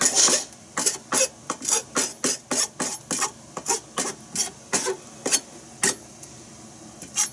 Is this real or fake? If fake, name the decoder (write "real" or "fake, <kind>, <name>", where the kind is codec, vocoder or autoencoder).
real